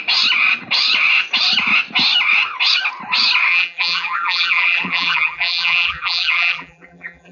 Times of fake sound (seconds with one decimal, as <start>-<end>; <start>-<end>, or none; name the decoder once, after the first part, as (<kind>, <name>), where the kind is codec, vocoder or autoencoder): 3.5-7.3 (vocoder, BigVGAN v2)